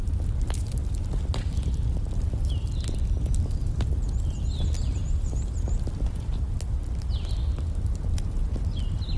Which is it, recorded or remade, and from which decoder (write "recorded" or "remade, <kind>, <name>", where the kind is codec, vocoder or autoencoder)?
recorded